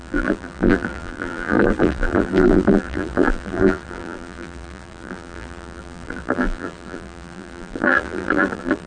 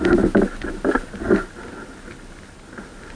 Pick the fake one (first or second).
first